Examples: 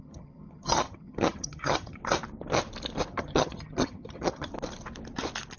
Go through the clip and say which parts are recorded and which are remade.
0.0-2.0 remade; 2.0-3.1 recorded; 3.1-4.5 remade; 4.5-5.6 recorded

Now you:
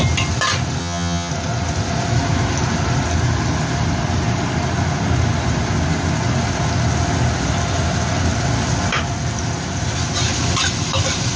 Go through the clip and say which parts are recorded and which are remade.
0.0-0.8 recorded; 0.8-1.3 remade; 1.3-11.4 recorded

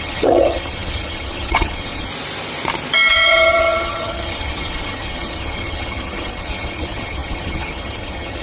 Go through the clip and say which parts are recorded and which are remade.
0.0-2.1 remade; 2.1-3.1 recorded; 3.1-8.4 remade

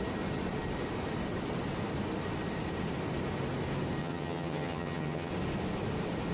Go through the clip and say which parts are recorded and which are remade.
0.0-4.0 recorded; 4.0-5.3 remade; 5.3-6.3 recorded

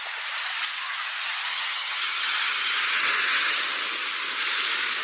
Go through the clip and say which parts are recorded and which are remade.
0.0-1.5 recorded; 1.5-3.6 remade; 3.6-5.0 recorded

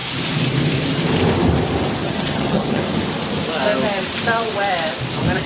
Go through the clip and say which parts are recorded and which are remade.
0.0-2.0 recorded; 2.0-2.8 remade; 2.8-5.5 recorded